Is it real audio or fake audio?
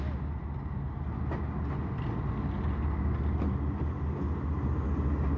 real